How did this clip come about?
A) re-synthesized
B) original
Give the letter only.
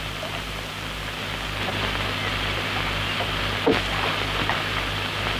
B